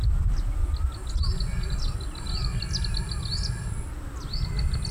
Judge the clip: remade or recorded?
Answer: recorded